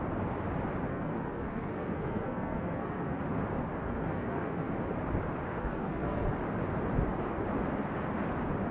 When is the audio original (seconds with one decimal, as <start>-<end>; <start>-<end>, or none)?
0.0-0.9; 3.2-3.8; 4.7-5.5; 6.3-8.7